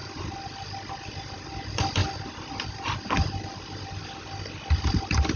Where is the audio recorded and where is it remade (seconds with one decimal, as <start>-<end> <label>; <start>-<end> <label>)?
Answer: 0.0-5.4 recorded